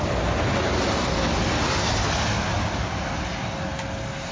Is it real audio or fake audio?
real